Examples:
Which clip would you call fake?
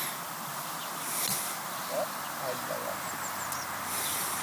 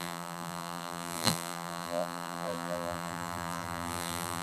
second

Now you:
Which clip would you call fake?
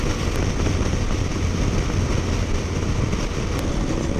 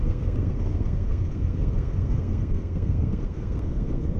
second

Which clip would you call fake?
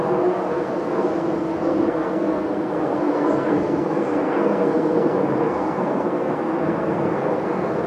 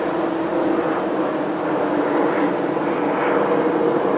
first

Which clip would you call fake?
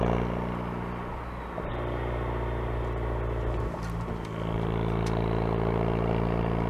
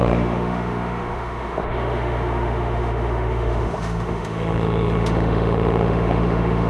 second